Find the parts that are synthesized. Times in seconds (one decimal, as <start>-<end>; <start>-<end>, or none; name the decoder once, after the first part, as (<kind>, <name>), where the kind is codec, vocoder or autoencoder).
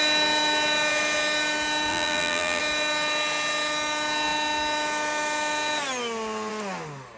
1.9-2.6 (vocoder, BigVGAN v2)